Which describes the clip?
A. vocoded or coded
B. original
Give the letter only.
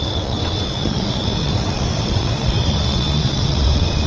A